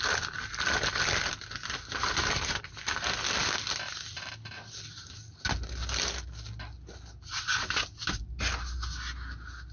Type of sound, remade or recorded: recorded